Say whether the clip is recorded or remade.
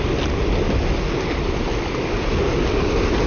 recorded